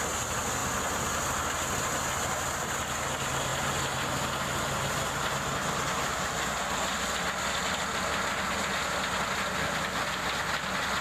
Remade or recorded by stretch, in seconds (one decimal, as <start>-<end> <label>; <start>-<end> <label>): 0.0-11.0 recorded